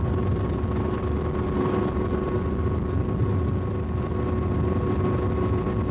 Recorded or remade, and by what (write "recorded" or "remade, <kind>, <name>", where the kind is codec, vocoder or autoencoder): recorded